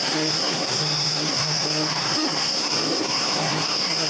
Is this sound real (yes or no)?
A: no